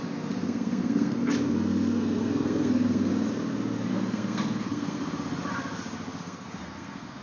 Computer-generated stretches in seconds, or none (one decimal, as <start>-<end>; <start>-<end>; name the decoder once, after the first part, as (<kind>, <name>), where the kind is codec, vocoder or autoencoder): 0.0-3.1 (codec, SNAC); 3.9-5.0; 6.2-7.2